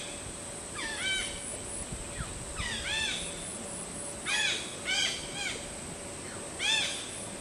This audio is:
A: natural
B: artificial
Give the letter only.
A